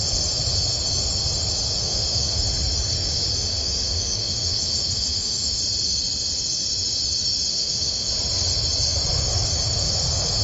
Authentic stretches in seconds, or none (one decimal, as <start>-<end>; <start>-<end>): 0.0-1.8; 2.4-3.5; 5.6-7.5; 8.1-10.4